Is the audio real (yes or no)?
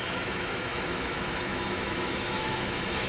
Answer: no